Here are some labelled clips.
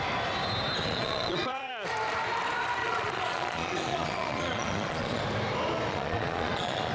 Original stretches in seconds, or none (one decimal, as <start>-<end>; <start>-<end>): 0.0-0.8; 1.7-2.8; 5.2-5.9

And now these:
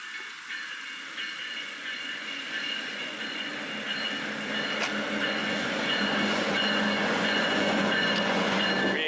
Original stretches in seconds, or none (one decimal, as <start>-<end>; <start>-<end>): 0.0-1.4; 3.5-5.2; 8.7-9.1

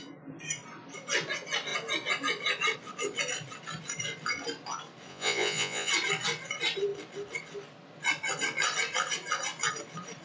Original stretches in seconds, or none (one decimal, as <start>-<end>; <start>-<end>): 0.0-5.1; 5.9-10.2